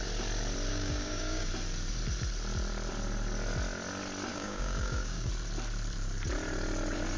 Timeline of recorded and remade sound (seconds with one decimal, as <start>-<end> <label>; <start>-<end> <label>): 0.0-0.7 recorded; 0.7-1.5 remade; 1.5-4.3 recorded; 4.3-5.3 remade; 5.3-7.2 recorded